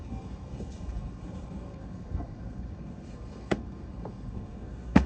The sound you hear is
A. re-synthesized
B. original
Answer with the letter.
A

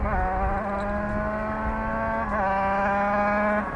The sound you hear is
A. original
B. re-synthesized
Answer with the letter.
A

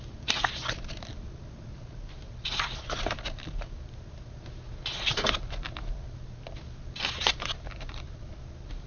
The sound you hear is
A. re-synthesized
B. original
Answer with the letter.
B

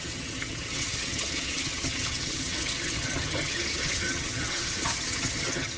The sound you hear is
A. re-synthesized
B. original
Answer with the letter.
A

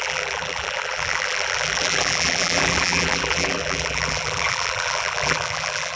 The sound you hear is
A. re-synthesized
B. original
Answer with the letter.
A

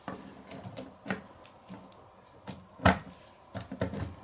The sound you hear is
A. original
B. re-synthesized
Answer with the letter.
A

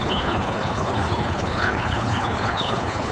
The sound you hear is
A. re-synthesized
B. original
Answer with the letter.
A